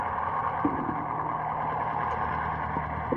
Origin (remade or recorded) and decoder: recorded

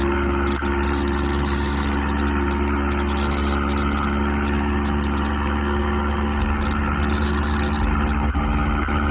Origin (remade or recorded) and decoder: recorded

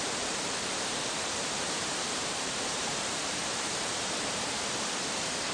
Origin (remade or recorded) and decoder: remade, vocoder, BigVGAN v2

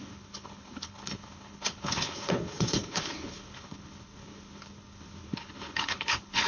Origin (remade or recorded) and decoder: remade, codec, HILCodec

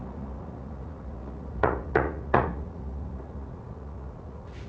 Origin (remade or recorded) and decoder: remade, vocoder, Vocos